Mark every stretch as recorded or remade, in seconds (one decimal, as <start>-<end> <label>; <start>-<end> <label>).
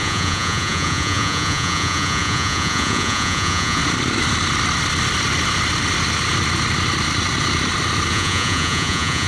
0.0-3.8 remade; 3.8-8.1 recorded; 8.1-9.3 remade